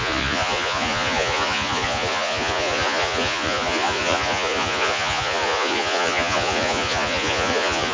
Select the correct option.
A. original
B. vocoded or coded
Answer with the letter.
B